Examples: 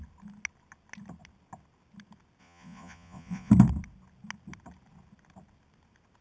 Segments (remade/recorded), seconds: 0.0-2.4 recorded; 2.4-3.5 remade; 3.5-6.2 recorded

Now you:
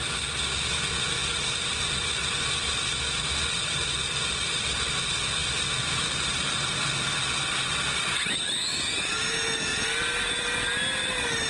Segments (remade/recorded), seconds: 0.0-11.5 recorded

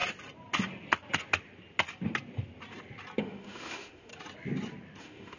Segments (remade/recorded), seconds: 0.0-3.2 recorded; 3.2-4.1 remade; 4.1-5.0 recorded; 5.0-5.4 remade

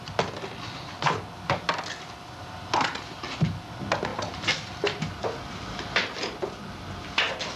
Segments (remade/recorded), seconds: 0.0-7.6 recorded

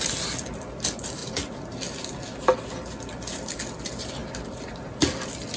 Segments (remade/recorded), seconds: 0.0-5.6 recorded

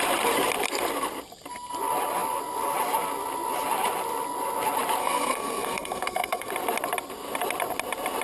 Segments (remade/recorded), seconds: 0.0-5.0 recorded; 5.0-6.5 remade; 6.5-8.2 recorded

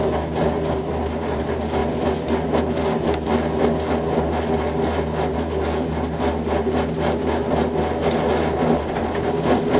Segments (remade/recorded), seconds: 0.0-9.8 recorded